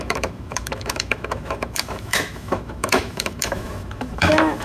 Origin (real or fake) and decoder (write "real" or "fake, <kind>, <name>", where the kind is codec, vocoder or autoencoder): fake, autoencoder, DAC-VAE